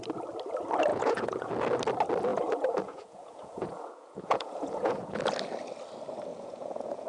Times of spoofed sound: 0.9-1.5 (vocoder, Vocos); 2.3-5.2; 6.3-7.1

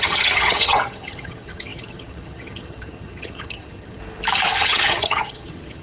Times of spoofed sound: 0.0-4.0 (vocoder, HiFi-GAN); 4.6-5.8

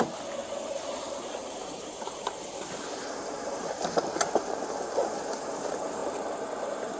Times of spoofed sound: 1.4-4.5 (vocoder, BigVGAN v2)

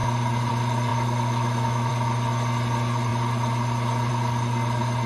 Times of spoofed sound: 0.9-1.9 (autoencoder, DAC-VAE)

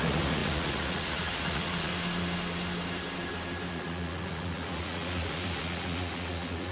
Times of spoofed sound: 0.0-1.9 (vocoder, Vocos); 3.7-6.7

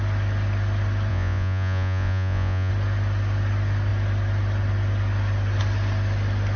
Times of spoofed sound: 1.1-2.7 (vocoder, Vocos)

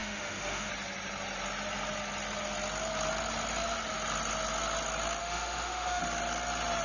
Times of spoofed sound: 0.0-0.7 (autoencoder, DAC-VAE); 5.2-6.0

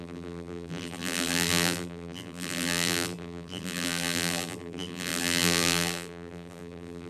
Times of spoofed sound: 0.0-7.1 (vocoder, BigVGAN v2)